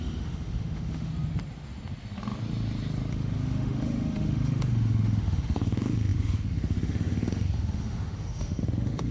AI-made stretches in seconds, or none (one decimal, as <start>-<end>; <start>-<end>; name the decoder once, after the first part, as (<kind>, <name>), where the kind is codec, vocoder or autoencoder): 0.0-1.1 (autoencoder, DAC-VAE); 3.1-9.1